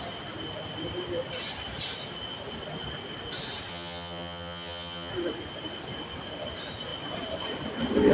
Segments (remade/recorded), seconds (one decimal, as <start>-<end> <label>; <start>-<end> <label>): 0.0-3.7 recorded; 3.7-5.1 remade; 5.1-8.1 recorded